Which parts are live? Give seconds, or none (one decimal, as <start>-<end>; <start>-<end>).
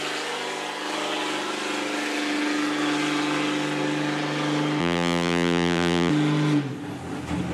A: 0.0-4.8; 6.1-7.5